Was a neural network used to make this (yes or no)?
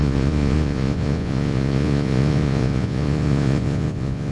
yes